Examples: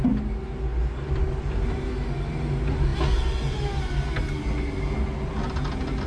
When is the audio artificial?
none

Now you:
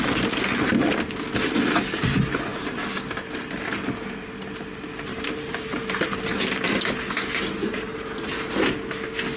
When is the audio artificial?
5.1-5.9 (vocoder, BigVGAN v2)

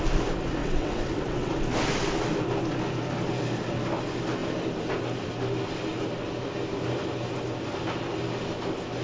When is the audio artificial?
0.6-1.5 (vocoder, WaveNeXt)

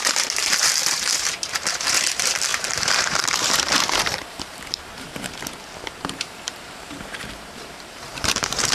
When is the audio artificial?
0.0-8.7 (vocoder, BigVGAN v2)

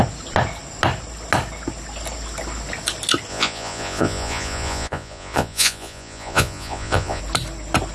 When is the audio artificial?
3.3-7.2 (vocoder, Vocos)